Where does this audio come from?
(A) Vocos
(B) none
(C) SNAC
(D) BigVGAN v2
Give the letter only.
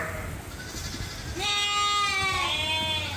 B